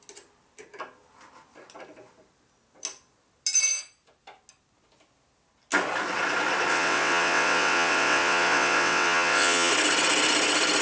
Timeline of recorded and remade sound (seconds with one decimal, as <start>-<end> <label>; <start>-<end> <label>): 0.0-6.7 recorded; 6.7-9.7 remade; 9.7-10.8 recorded